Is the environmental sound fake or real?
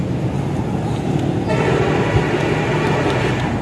real